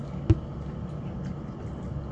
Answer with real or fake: real